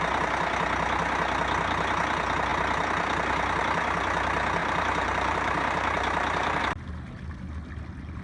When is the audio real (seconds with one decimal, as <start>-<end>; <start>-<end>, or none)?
0.0-4.6; 6.6-8.2